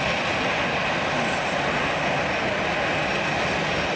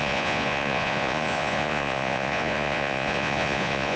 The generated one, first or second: second